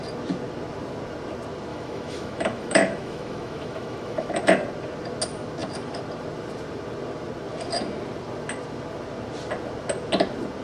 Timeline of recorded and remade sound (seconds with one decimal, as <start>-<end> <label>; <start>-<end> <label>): 0.0-1.7 recorded; 1.7-4.4 remade; 4.4-10.6 recorded